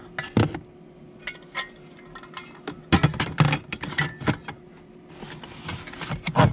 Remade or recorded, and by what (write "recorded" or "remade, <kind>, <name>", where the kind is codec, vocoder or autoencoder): recorded